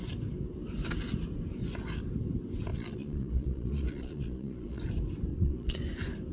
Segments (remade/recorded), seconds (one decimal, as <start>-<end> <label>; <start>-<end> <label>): 0.0-2.7 recorded; 2.7-4.8 remade; 4.8-5.3 recorded; 5.3-5.8 remade; 5.8-6.3 recorded